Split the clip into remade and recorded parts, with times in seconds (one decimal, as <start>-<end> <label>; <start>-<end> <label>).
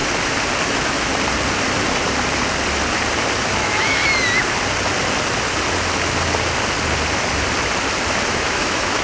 0.0-0.7 recorded; 0.7-1.1 remade; 1.1-3.4 recorded; 3.4-4.0 remade; 4.0-8.3 recorded; 8.3-9.0 remade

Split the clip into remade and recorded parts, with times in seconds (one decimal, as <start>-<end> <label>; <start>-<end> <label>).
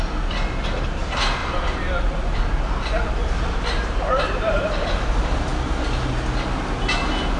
0.0-1.4 recorded; 1.4-2.0 remade; 2.0-3.2 recorded; 3.2-4.9 remade; 4.9-7.4 recorded